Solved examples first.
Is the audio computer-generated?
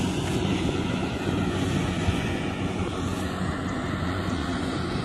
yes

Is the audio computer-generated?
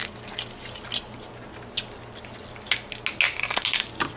no